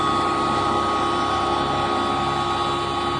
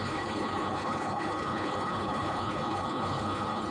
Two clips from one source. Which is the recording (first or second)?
first